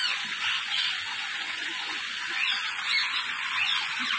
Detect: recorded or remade remade